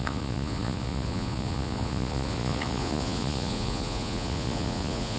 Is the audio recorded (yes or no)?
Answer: no